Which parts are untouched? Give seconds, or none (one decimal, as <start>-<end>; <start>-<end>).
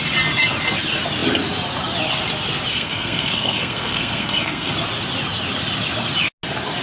0.0-2.7; 4.7-6.8